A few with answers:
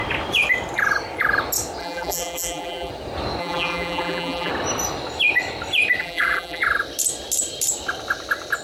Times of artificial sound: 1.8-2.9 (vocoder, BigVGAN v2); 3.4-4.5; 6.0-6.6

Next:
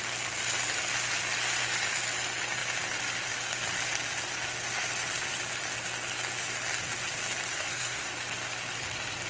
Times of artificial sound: 7.5-8.1 (codec, SNAC)

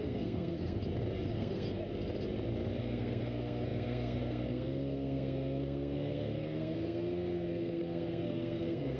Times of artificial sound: 0.0-0.8 (codec, SNAC); 1.3-1.8; 2.8-9.0